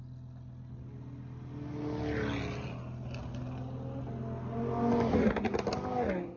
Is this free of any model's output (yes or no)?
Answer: yes